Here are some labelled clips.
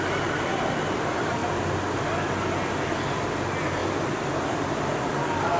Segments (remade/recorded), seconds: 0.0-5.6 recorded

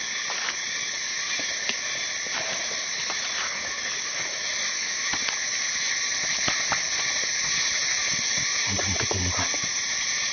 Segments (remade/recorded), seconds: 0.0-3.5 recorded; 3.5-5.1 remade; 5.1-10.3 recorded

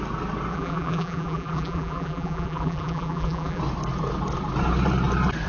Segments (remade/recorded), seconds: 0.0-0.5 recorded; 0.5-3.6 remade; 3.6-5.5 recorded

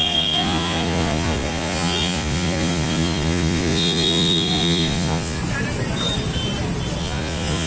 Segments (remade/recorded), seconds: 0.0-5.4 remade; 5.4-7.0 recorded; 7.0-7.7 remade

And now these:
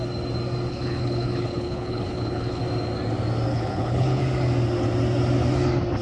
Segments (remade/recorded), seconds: 0.0-0.7 recorded; 0.7-2.6 remade; 2.6-3.5 recorded; 3.5-4.2 remade; 4.2-6.0 recorded

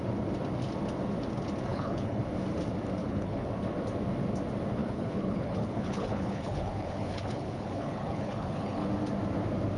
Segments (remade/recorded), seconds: 0.0-1.7 recorded; 1.7-2.2 remade; 2.2-3.0 recorded; 3.0-3.5 remade; 3.5-4.8 recorded; 4.8-8.9 remade; 8.9-9.8 recorded

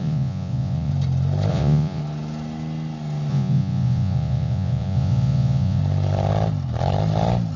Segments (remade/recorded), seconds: 0.0-0.9 remade; 0.9-1.5 recorded; 1.5-2.0 remade; 2.0-3.3 recorded; 3.3-5.8 remade; 5.8-7.6 recorded

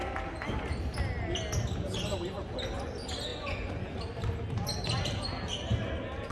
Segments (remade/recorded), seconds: 0.0-3.3 recorded; 3.3-4.0 remade; 4.0-6.3 recorded